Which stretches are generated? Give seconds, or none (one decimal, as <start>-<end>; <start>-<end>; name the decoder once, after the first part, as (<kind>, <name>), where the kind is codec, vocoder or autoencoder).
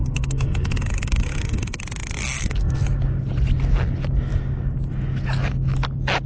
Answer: 0.0-1.8 (codec, SNAC); 2.2-2.8